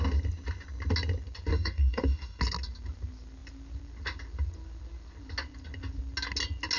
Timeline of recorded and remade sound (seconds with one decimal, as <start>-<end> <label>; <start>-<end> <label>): 0.0-1.5 recorded; 1.5-2.4 remade; 2.4-6.8 recorded